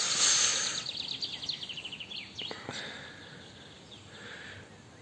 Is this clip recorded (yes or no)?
yes